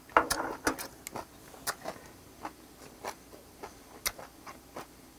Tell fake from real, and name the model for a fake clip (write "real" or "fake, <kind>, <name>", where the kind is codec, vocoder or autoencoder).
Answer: real